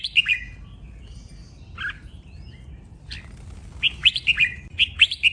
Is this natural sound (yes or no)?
yes